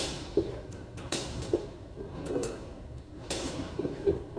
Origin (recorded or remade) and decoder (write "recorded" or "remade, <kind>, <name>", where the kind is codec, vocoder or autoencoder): remade, codec, SNAC